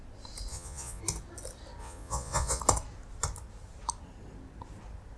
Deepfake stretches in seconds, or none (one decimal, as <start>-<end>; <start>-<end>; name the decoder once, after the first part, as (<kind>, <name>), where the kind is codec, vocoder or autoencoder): 0.5-1.0 (vocoder, Vocos); 1.8-2.6